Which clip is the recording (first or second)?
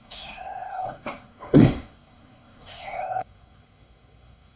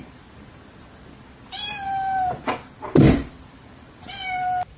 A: second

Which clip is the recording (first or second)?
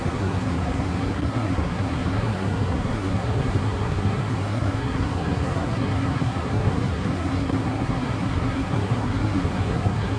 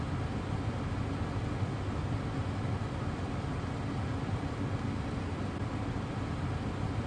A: second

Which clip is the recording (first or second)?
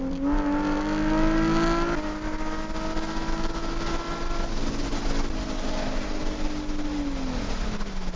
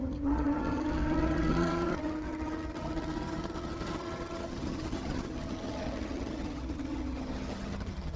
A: first